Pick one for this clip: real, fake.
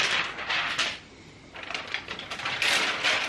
fake